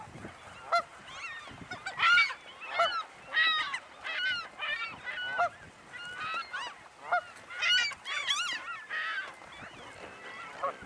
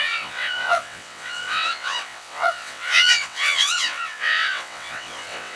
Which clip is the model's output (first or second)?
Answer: second